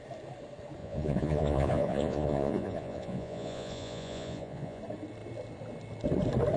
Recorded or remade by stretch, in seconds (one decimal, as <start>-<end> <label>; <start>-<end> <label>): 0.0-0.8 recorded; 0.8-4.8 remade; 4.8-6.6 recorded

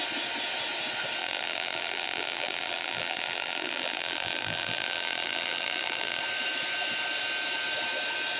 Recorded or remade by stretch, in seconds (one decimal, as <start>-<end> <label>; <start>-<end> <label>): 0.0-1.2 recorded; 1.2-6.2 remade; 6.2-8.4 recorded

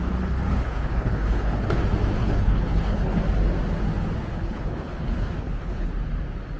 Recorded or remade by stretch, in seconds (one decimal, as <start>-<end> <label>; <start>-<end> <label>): 0.0-0.5 recorded; 0.5-1.8 remade; 1.8-2.2 recorded; 2.2-3.2 remade; 3.2-4.3 recorded; 4.3-5.9 remade; 5.9-6.6 recorded